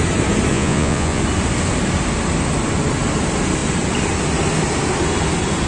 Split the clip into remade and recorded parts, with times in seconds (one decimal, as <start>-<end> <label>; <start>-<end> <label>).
0.0-0.5 recorded; 0.5-1.2 remade; 1.2-5.7 recorded